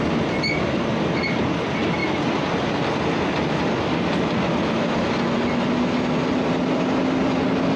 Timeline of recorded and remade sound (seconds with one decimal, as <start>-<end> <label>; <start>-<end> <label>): 0.0-7.8 recorded